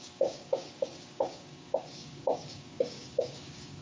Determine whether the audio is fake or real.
fake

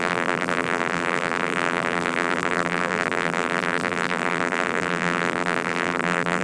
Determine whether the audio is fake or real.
fake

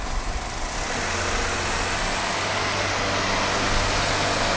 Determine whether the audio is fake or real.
real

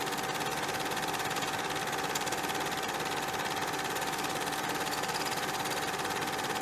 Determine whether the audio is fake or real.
real